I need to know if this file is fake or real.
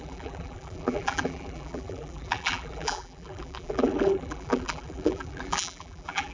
fake